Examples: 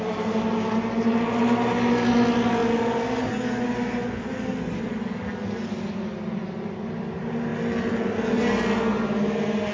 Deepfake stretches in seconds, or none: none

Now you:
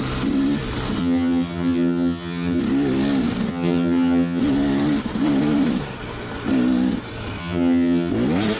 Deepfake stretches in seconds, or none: 1.0-2.6 (vocoder, HiFi-GAN); 3.5-4.4; 7.4-8.1

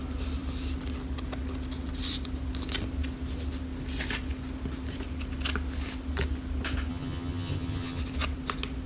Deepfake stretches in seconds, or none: 6.9-8.0 (vocoder, HiFi-GAN)